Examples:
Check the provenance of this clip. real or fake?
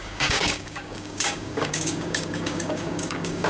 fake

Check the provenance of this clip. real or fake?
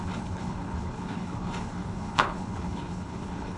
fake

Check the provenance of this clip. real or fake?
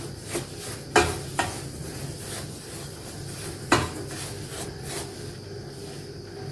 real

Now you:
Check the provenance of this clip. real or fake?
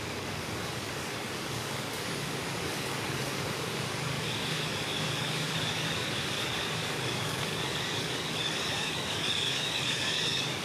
fake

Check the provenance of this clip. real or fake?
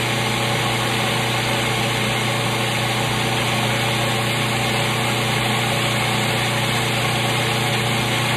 real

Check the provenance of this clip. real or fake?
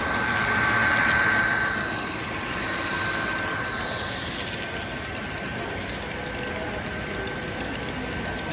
real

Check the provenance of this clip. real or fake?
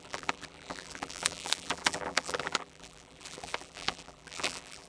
fake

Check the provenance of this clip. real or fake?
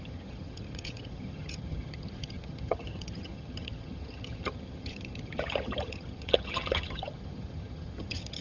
fake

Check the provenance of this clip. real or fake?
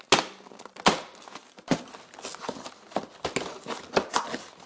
real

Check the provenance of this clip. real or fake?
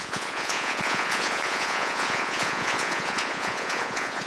fake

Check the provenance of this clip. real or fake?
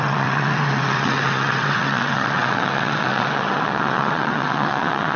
fake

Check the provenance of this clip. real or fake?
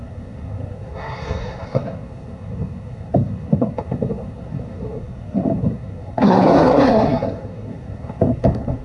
fake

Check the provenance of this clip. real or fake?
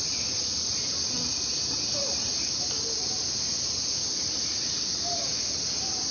real